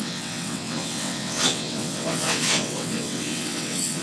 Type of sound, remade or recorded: remade